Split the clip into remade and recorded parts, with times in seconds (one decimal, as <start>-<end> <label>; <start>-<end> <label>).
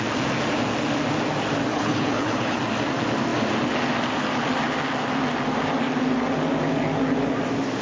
0.0-1.7 recorded; 1.7-2.6 remade; 2.6-7.8 recorded